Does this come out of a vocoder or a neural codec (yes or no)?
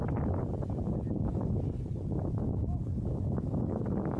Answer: no